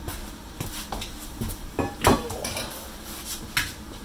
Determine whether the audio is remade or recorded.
recorded